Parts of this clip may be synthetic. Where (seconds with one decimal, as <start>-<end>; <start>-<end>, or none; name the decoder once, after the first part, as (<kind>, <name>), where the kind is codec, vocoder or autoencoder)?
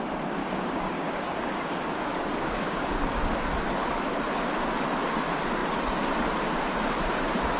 0.4-3.0 (codec, DAC)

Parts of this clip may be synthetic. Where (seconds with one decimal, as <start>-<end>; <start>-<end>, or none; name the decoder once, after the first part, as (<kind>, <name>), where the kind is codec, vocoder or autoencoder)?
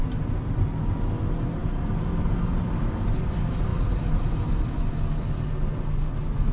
none